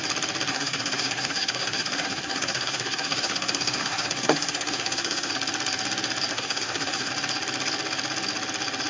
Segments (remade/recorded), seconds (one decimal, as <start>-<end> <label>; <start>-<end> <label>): 0.0-0.5 recorded; 0.5-5.3 remade; 5.3-6.3 recorded; 6.3-7.1 remade; 7.1-8.9 recorded